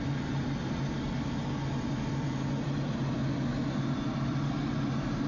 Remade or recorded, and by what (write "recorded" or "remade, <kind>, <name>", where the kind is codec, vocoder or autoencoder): recorded